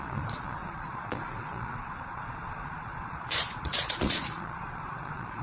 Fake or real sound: fake